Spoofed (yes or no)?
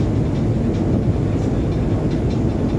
no